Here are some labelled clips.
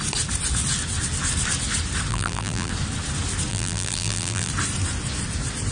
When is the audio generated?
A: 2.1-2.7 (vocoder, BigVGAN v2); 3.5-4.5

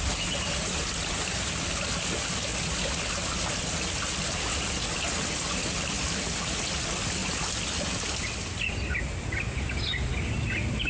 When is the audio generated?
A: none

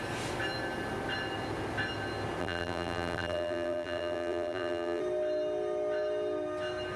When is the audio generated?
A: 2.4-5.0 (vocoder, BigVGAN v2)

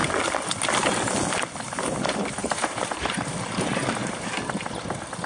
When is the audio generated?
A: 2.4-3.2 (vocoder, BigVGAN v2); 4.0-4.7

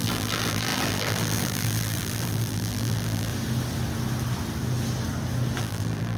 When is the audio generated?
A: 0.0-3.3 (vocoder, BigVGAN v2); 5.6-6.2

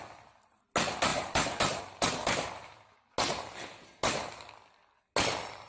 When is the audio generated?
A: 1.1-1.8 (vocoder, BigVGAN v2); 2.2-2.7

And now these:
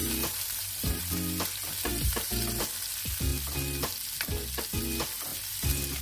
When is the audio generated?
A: 0.0-1.0 (vocoder, BigVGAN v2); 1.9-2.6

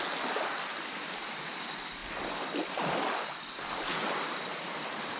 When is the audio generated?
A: 2.0-5.2 (vocoder, BigVGAN v2)